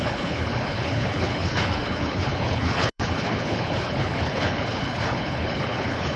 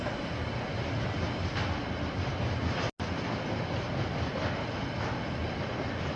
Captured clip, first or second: second